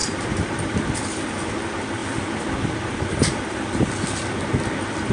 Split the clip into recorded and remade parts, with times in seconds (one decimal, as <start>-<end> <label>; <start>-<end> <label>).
0.0-0.6 remade; 0.6-5.1 recorded